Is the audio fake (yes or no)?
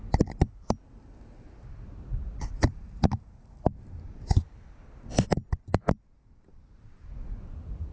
no